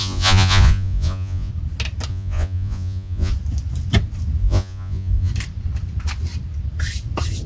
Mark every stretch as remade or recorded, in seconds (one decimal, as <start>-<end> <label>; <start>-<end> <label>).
0.0-1.5 remade; 1.5-2.1 recorded; 2.1-3.3 remade; 3.3-4.4 recorded; 4.4-5.3 remade; 5.3-7.5 recorded